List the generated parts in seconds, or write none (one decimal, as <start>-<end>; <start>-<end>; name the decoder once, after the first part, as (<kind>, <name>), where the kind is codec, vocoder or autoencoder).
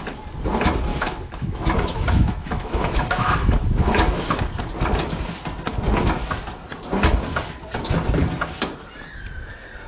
0.9-4.4 (autoencoder, DAC-VAE)